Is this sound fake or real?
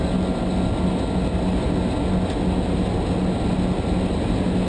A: real